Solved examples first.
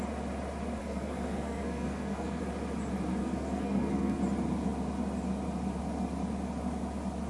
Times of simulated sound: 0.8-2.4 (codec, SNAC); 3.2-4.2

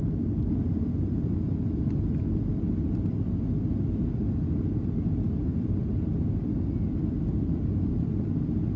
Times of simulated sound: none

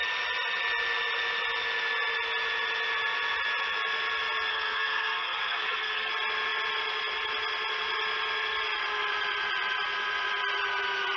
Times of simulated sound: 4.5-6.1 (codec, SNAC)

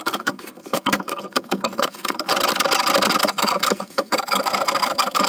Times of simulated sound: 0.0-2.3 (codec, SNAC); 3.2-5.3